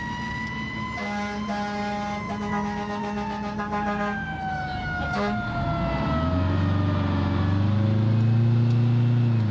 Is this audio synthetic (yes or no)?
no